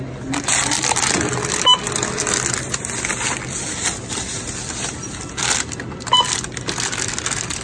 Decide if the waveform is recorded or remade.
recorded